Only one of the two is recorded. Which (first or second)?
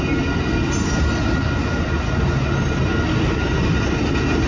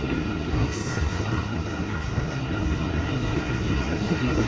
first